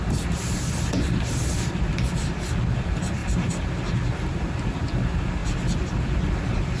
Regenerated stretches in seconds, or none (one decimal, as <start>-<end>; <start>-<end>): 5.4-6.1